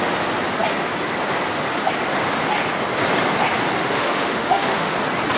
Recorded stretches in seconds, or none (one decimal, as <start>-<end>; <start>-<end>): 0.0-3.8; 4.9-5.4